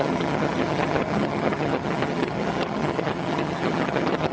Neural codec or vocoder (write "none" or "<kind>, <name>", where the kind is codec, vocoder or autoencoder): vocoder, HiFi-GAN